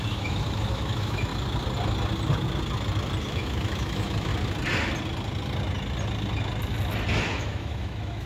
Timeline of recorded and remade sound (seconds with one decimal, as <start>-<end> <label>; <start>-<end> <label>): 0.0-1.3 remade; 1.3-3.2 recorded; 3.2-4.3 remade; 4.3-7.2 recorded; 7.2-8.3 remade